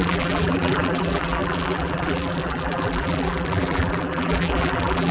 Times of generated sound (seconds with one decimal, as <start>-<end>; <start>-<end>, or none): 0.0-5.1